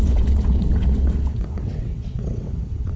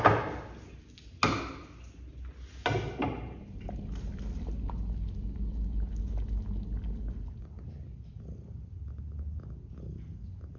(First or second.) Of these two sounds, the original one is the second